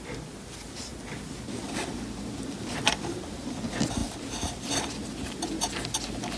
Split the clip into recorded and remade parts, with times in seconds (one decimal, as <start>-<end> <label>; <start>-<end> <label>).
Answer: 0.0-6.4 recorded